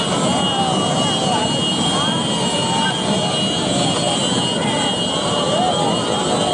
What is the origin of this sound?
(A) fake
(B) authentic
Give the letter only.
B